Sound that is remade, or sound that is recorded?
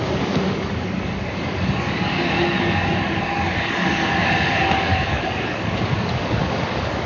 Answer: remade